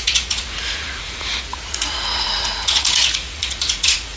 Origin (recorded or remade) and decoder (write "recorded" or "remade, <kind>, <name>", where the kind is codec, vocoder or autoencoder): remade, vocoder, Vocos